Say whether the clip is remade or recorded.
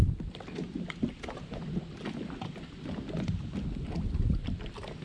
recorded